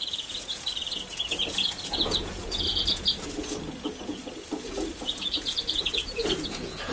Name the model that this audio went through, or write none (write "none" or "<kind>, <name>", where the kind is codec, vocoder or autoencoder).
vocoder, Vocos